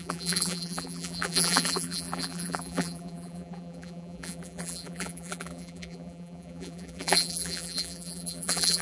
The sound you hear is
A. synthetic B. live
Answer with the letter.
A